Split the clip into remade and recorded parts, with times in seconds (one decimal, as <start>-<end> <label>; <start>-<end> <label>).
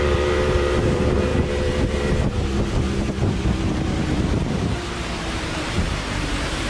0.0-6.7 remade